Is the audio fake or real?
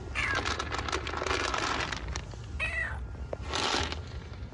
real